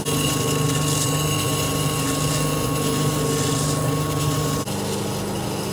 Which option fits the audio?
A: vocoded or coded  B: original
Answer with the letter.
B